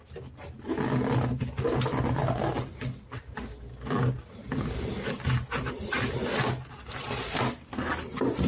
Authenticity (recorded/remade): recorded